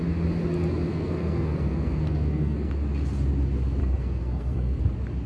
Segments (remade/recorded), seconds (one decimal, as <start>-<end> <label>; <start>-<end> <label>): 0.0-0.9 recorded; 0.9-2.7 remade; 2.7-3.8 recorded; 3.8-4.8 remade; 4.8-5.3 recorded